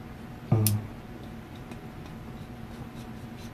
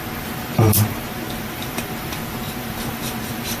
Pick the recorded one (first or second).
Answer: first